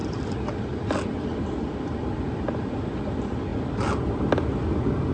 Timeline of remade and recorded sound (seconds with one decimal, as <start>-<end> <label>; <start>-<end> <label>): 0.0-5.1 recorded